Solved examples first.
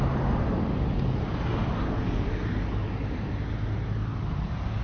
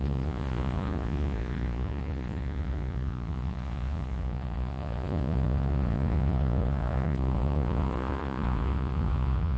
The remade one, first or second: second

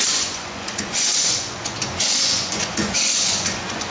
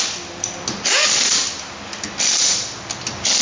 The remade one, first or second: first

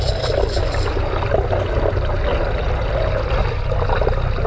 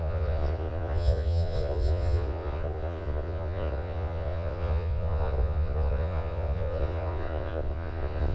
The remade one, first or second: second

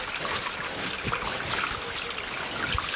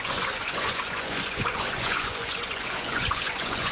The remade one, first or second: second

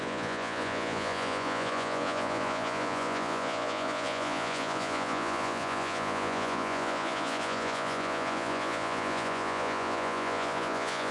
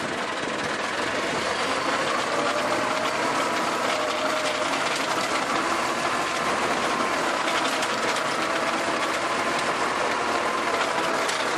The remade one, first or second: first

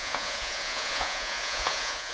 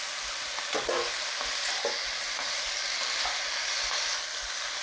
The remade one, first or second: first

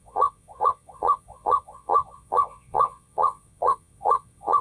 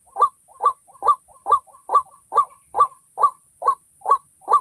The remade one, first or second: first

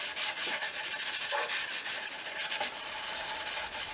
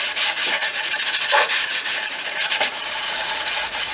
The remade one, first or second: second